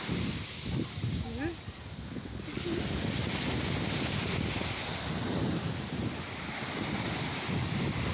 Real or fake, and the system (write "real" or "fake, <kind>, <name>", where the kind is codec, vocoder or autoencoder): real